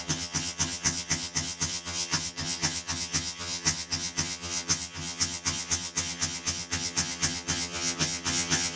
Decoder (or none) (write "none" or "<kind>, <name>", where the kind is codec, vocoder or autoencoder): vocoder, HiFi-GAN